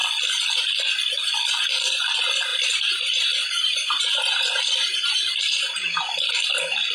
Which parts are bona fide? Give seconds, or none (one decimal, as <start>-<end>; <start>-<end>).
0.0-2.5; 5.6-6.9